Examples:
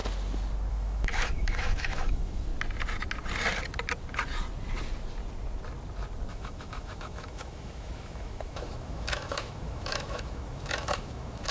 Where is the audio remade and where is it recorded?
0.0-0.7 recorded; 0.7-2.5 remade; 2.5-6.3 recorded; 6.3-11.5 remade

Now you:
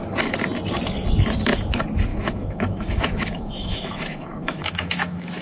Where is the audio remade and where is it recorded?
0.0-2.1 recorded; 2.1-5.4 remade

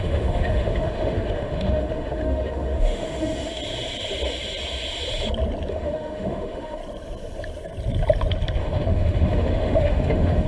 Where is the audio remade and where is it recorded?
0.0-3.6 remade; 3.6-5.7 recorded; 5.7-6.8 remade; 6.8-8.6 recorded; 8.6-10.5 remade

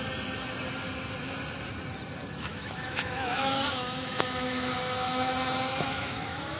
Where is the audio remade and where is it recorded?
0.0-2.5 recorded; 2.5-6.6 remade

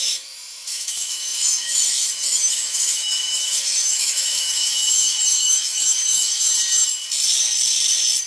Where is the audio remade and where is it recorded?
0.0-6.4 remade; 6.4-8.3 recorded

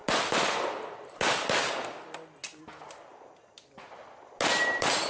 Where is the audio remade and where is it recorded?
0.0-5.1 recorded